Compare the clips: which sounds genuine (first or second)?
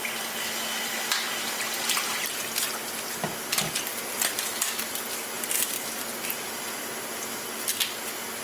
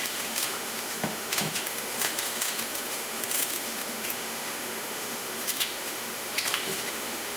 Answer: first